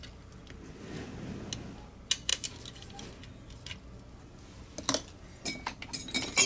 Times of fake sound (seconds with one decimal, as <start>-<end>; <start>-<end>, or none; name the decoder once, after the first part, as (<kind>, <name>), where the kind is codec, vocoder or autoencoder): none